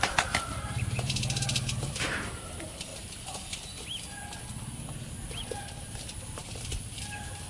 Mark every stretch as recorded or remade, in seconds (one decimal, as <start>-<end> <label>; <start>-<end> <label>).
0.0-2.9 remade; 2.9-5.4 recorded; 5.4-7.5 remade